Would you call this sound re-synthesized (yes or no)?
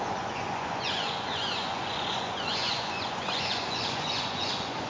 yes